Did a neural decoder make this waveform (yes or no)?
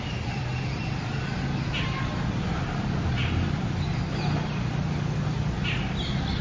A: no